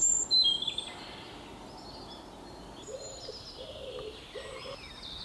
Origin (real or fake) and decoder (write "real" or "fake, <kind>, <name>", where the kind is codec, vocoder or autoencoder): real